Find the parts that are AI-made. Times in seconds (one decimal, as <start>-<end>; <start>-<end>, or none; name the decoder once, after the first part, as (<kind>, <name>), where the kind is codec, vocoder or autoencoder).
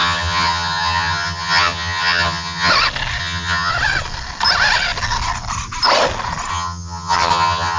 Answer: 0.0-2.7 (vocoder, HiFi-GAN); 3.2-3.7; 6.5-7.8